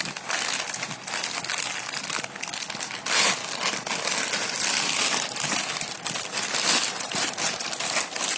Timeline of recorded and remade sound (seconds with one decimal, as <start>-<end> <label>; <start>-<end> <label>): 0.0-8.4 recorded